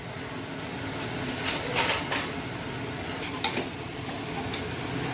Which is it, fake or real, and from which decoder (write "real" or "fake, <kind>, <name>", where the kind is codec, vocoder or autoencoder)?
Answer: real